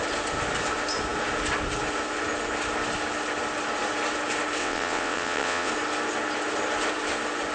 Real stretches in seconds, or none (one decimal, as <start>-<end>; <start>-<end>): 0.0-4.6; 5.7-7.5